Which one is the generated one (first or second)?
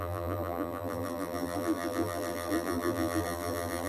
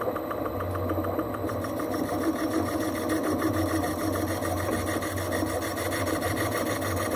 first